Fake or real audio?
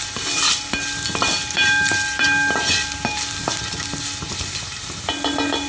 real